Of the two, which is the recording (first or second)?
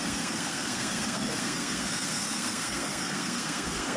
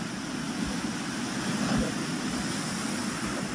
second